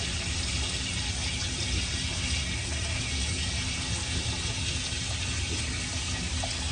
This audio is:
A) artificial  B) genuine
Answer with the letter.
B